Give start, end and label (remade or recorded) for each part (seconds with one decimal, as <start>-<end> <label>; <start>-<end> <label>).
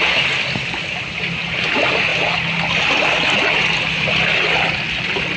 0.0-5.4 recorded